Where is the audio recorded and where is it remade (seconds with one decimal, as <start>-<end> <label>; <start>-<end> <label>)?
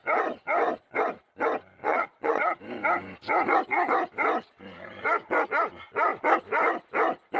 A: 0.0-1.8 recorded; 1.8-2.6 remade; 2.6-7.4 recorded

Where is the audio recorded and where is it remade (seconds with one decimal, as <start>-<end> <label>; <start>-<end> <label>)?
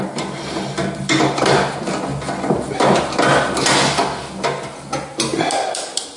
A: 0.0-6.2 recorded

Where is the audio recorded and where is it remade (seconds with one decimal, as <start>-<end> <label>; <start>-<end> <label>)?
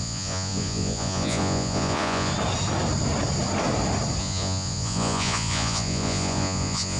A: 0.0-2.3 remade; 2.3-4.2 recorded; 4.2-7.0 remade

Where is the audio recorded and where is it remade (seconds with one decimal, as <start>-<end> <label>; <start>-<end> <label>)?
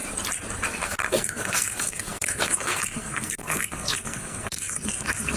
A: 0.0-0.7 recorded; 0.7-5.4 remade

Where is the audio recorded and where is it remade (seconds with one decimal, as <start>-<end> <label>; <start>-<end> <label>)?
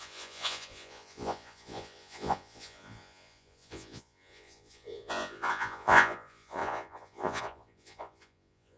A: 0.0-8.8 remade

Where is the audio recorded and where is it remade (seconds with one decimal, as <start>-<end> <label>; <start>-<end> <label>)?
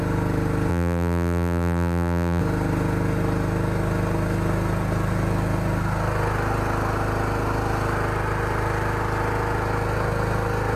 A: 0.0-0.7 recorded; 0.7-2.4 remade; 2.4-10.8 recorded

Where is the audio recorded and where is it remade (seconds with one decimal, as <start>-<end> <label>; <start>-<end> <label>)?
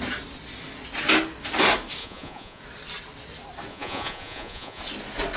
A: 0.0-2.0 recorded; 2.0-2.6 remade; 2.6-3.7 recorded; 3.7-4.8 remade; 4.8-5.4 recorded